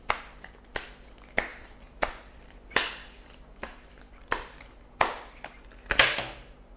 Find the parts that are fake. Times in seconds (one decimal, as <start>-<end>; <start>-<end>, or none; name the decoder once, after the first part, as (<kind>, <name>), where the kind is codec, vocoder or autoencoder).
1.5-5.4 (vocoder, BigVGAN v2)